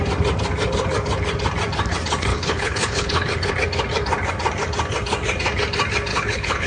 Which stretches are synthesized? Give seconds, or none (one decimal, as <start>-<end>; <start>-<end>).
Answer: 2.3-3.5; 6.1-6.7